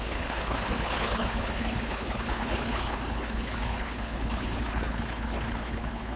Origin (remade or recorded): remade